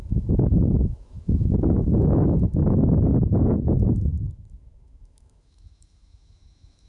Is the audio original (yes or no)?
no